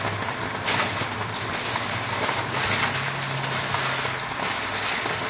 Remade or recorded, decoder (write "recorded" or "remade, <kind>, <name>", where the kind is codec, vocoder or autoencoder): recorded